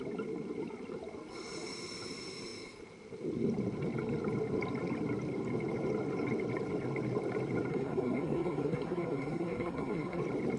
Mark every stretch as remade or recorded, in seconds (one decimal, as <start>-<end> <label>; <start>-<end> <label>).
0.0-7.7 recorded; 7.7-10.2 remade; 10.2-10.6 recorded